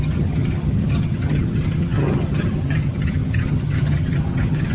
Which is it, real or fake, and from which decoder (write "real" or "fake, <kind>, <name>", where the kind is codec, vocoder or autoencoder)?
fake, vocoder, HiFi-GAN